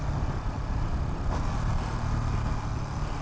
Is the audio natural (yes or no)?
yes